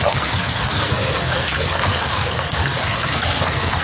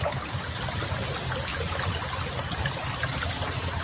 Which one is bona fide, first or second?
second